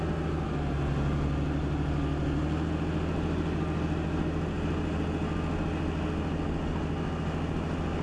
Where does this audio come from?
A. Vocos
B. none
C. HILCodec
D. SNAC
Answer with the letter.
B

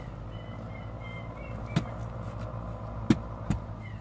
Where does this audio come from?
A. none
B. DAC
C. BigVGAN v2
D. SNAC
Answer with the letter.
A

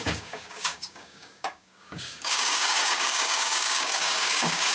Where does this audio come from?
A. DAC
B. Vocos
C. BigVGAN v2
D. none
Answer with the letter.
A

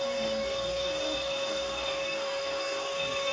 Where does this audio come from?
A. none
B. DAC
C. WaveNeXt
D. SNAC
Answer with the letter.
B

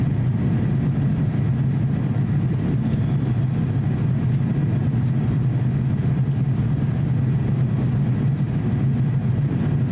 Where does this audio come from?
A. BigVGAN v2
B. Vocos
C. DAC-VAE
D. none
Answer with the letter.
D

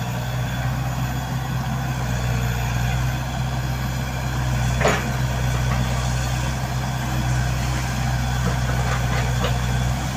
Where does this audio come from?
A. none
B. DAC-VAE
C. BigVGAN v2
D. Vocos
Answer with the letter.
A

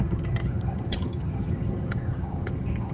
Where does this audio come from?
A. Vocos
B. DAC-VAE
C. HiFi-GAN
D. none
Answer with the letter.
C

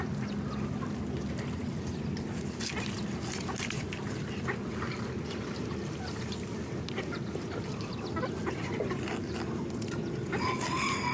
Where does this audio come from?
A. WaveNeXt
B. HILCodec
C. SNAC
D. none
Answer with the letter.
D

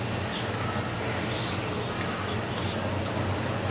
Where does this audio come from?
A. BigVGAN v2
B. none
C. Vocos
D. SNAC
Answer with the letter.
A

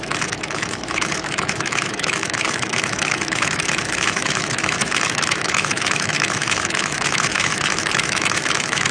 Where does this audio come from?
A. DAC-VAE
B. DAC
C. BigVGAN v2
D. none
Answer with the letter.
A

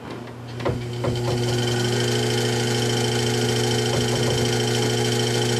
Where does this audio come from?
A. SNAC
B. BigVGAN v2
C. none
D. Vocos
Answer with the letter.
C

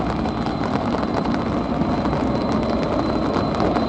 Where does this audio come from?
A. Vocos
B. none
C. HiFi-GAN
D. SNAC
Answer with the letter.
B